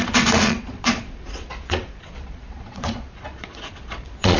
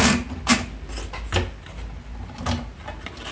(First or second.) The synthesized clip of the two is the first